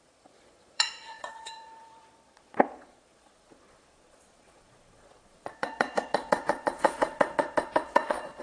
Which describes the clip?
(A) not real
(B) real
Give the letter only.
A